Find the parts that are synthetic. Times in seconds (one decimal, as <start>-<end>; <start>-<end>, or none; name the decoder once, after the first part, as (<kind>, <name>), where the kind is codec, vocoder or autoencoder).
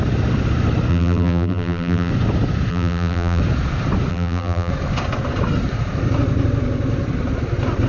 0.9-2.1 (vocoder, BigVGAN v2); 2.7-3.4; 4.1-4.7